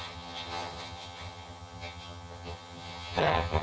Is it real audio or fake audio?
fake